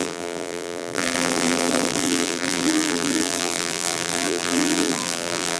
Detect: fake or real fake